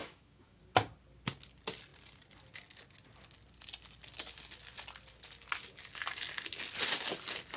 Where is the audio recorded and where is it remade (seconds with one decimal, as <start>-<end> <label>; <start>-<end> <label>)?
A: 0.0-0.6 remade; 0.6-7.6 recorded